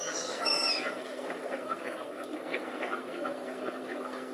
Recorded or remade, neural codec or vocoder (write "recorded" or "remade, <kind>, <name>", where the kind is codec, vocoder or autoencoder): remade, codec, SNAC